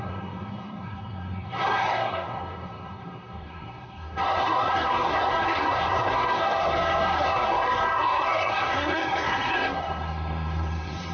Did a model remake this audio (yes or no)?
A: yes